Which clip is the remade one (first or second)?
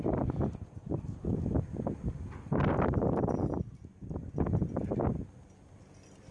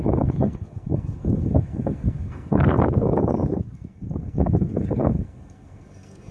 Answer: second